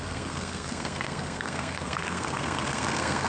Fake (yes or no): yes